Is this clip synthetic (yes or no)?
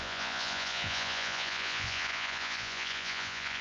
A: yes